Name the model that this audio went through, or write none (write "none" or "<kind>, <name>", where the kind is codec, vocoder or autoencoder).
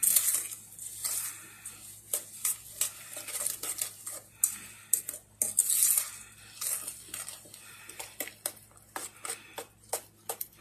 none